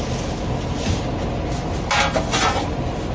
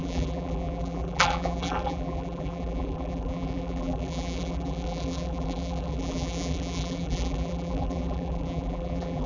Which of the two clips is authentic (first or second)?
first